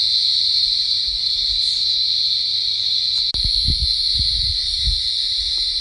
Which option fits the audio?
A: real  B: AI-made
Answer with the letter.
A